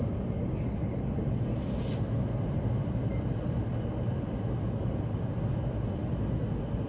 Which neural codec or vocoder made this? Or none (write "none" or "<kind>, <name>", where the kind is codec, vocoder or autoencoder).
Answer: none